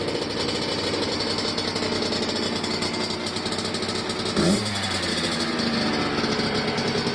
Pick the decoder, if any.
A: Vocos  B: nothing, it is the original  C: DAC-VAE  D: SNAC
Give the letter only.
B